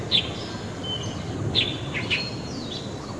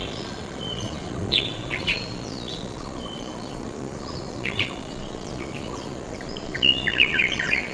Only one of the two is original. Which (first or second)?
first